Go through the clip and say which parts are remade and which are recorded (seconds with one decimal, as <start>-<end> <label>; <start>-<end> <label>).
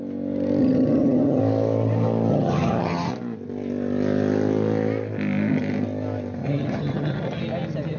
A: 0.0-0.6 recorded; 0.6-1.4 remade; 1.4-2.3 recorded; 2.3-3.1 remade; 3.1-6.4 recorded; 6.4-7.4 remade; 7.4-8.0 recorded